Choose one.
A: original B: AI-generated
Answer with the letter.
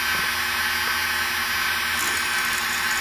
A